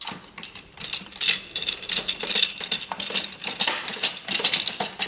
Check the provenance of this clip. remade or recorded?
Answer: remade